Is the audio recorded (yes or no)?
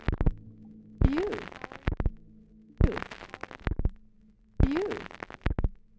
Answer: yes